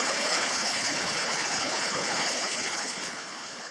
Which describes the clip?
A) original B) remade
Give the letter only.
B